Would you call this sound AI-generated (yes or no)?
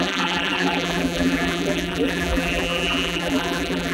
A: yes